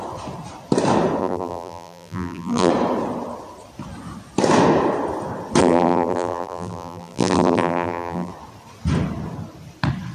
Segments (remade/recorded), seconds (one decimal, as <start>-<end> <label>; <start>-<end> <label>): 0.0-1.2 recorded; 1.2-2.7 remade; 2.7-5.6 recorded; 5.6-8.3 remade; 8.3-10.1 recorded